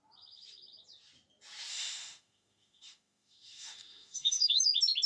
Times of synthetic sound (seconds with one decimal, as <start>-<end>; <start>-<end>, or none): 1.7-4.6